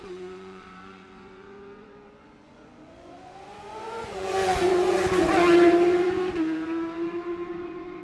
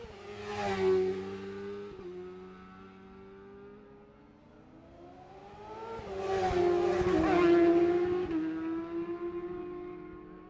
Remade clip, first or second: first